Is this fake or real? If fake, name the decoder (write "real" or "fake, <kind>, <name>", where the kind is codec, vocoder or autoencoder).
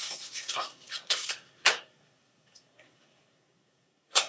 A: fake, codec, SNAC